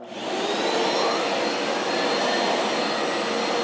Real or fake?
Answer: real